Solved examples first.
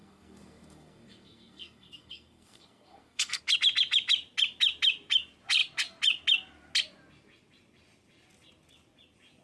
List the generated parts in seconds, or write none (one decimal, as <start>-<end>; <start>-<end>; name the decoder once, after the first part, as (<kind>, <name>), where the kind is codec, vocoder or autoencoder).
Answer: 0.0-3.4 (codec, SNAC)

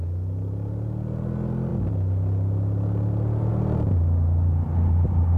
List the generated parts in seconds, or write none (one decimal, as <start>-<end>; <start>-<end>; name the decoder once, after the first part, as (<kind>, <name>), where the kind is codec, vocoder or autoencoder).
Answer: none

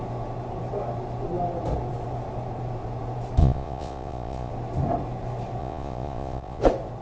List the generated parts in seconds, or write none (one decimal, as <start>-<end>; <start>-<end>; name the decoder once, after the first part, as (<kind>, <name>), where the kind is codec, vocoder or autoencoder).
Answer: 3.4-4.5 (vocoder, Vocos); 5.6-6.6

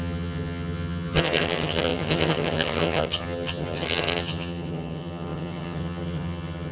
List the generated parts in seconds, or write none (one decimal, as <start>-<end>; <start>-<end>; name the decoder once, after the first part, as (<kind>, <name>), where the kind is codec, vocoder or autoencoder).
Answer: 0.0-6.7 (vocoder, HiFi-GAN)

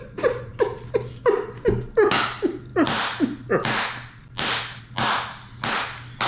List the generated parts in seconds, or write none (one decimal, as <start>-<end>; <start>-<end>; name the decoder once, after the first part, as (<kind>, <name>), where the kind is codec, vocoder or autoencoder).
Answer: none